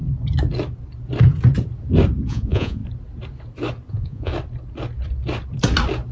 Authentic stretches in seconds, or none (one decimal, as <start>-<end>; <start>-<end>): 0.0-2.3; 2.8-3.9; 4.3-6.1